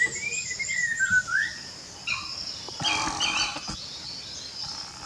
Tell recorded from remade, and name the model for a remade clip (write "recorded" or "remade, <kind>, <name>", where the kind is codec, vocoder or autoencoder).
recorded